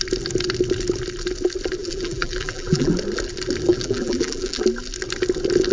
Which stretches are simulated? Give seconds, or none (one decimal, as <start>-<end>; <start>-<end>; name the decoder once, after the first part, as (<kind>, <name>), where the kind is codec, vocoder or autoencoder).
1.8-2.9 (vocoder, BigVGAN v2); 3.7-4.6